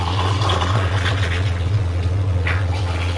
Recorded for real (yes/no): no